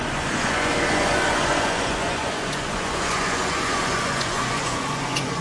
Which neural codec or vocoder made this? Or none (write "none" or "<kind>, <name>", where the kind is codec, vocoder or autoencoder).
vocoder, Vocos